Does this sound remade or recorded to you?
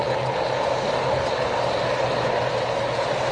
recorded